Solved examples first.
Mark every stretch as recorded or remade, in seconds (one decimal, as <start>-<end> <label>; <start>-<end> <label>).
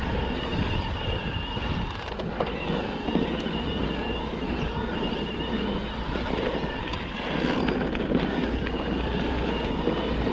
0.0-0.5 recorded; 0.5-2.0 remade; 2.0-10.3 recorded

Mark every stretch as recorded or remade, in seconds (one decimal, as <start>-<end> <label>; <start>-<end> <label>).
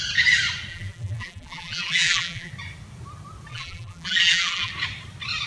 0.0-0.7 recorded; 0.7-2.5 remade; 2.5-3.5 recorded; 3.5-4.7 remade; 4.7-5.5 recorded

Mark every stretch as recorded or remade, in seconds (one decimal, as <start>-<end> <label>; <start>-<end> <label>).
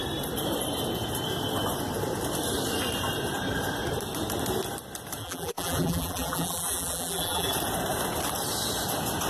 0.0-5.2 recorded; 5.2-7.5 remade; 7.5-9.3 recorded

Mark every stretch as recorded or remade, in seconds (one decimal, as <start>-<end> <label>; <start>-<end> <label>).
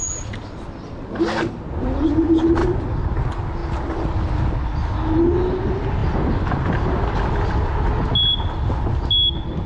0.0-2.6 recorded; 2.6-3.2 remade; 3.2-3.6 recorded; 3.6-5.2 remade; 5.2-6.0 recorded; 6.0-7.4 remade; 7.4-9.7 recorded